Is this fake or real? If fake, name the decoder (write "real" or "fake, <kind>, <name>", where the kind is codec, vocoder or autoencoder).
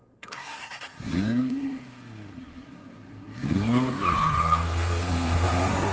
fake, codec, SNAC